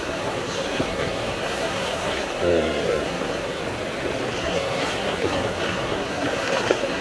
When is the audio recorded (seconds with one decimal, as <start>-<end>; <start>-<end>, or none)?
3.6-4.4